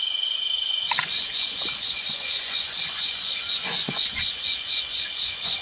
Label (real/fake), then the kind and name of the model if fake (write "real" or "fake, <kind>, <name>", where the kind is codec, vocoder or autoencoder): fake, vocoder, Vocos